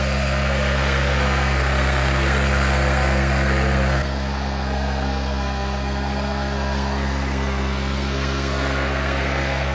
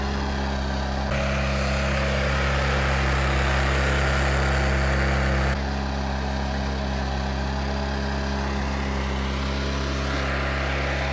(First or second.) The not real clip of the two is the first